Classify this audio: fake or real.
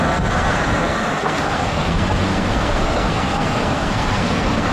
fake